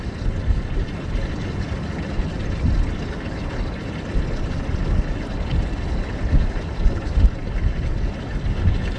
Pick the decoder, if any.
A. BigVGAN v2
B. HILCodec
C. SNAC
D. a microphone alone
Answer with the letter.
D